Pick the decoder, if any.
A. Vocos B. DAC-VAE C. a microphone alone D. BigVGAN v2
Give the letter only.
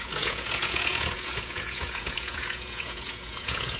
A